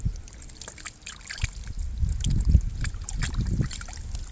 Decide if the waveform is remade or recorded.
recorded